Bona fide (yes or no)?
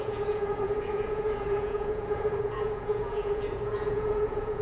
no